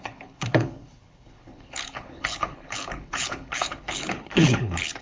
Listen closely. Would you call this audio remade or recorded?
remade